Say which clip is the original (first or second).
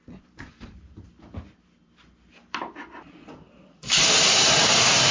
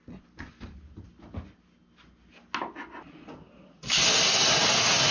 second